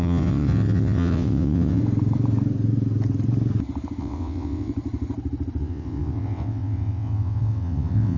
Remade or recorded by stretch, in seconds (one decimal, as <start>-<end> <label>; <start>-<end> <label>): 0.0-1.8 remade; 1.8-4.0 recorded; 4.0-4.7 remade; 4.7-5.6 recorded; 5.6-8.2 remade